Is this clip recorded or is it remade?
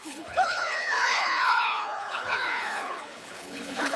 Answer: remade